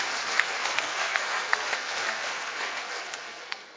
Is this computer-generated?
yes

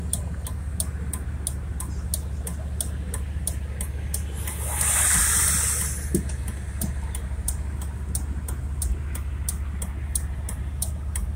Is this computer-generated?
no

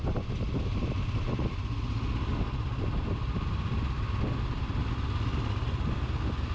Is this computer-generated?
no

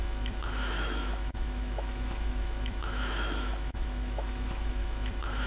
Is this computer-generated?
yes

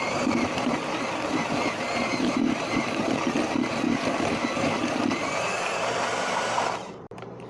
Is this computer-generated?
yes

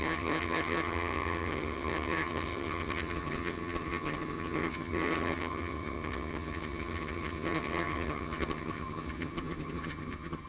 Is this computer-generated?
yes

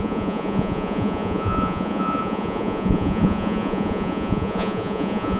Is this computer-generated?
yes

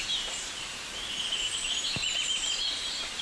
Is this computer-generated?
yes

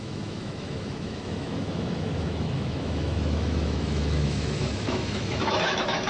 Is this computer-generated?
yes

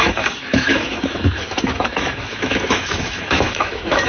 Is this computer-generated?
yes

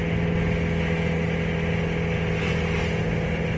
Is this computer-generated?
no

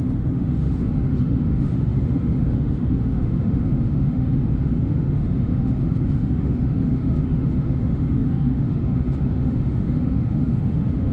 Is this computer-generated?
yes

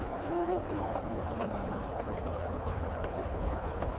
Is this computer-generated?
yes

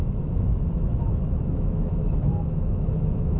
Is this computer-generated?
yes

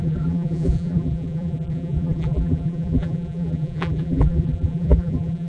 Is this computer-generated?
yes